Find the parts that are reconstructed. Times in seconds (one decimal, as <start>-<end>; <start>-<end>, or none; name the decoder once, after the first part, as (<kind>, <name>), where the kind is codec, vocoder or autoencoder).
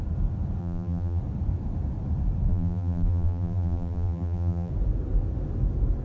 0.6-1.2 (vocoder, BigVGAN v2); 2.5-4.7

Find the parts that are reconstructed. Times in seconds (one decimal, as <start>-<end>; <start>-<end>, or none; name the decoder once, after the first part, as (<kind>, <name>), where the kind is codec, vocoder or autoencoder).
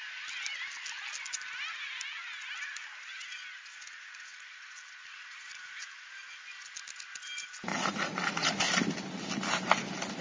3.9-6.4 (vocoder, Vocos); 7.7-8.6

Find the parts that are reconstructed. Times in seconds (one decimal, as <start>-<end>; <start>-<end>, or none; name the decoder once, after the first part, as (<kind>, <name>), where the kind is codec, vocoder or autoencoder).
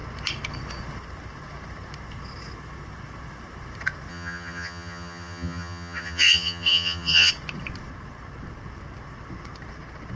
4.1-7.3 (vocoder, HiFi-GAN)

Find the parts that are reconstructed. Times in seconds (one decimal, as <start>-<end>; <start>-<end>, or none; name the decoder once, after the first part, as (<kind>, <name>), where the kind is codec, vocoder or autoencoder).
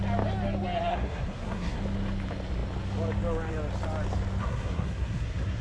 0.9-1.8 (codec, SNAC); 4.4-5.6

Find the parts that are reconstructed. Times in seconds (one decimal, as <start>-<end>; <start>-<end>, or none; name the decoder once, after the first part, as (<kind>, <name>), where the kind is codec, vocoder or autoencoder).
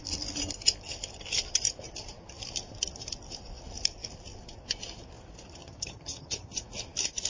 5.6-6.6 (vocoder, HiFi-GAN)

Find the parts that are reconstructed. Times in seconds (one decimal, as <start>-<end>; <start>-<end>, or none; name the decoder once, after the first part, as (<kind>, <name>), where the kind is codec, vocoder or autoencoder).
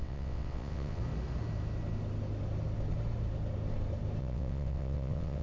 0.0-1.0 (vocoder, WaveNeXt); 4.2-5.4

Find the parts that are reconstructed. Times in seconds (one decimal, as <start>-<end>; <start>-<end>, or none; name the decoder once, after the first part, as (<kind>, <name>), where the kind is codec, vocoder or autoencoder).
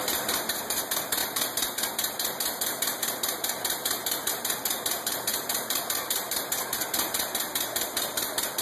0.0-8.6 (vocoder, BigVGAN v2)